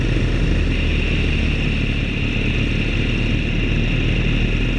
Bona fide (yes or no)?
yes